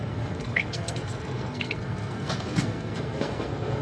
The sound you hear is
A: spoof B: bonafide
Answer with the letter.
A